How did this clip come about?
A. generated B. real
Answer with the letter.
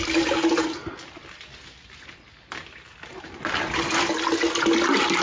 B